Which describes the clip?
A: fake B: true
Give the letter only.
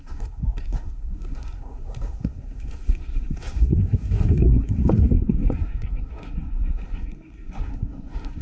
A